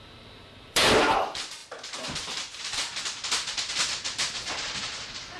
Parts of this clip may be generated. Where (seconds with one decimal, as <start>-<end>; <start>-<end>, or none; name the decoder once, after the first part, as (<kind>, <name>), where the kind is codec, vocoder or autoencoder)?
0.0-5.4 (vocoder, BigVGAN v2)